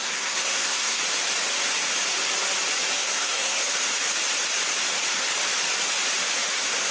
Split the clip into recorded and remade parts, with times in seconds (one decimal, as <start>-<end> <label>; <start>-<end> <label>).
0.0-1.0 remade; 1.0-3.0 recorded; 3.0-3.6 remade; 3.6-6.5 recorded; 6.5-6.9 remade

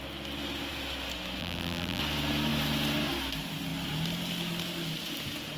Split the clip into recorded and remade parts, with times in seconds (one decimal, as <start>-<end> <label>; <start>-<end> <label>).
0.0-1.4 recorded; 1.4-2.0 remade; 2.0-5.6 recorded

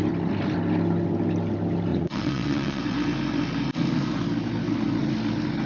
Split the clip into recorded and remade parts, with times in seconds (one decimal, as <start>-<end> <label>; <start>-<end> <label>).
0.0-1.9 recorded; 1.9-2.8 remade; 2.8-5.7 recorded

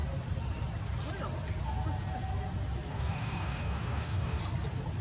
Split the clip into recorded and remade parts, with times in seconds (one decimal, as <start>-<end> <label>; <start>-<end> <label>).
0.0-2.9 recorded; 2.9-4.4 remade; 4.4-5.0 recorded